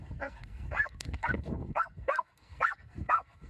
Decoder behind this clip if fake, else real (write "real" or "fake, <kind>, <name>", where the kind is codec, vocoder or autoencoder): fake, codec, SNAC